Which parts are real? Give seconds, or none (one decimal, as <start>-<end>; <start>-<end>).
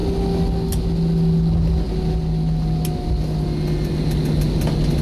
0.0-5.0